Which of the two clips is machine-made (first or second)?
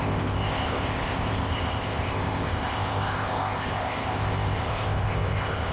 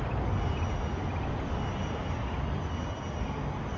first